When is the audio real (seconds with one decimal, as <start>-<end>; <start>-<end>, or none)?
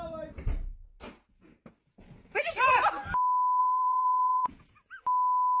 0.0-1.8; 2.5-3.6; 4.6-5.6